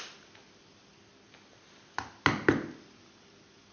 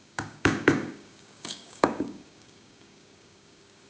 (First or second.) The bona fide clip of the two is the first